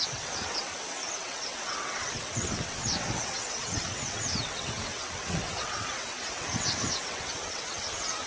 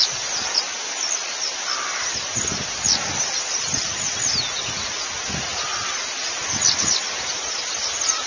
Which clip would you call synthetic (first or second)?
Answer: first